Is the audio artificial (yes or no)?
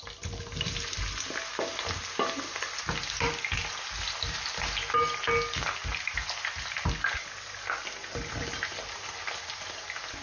no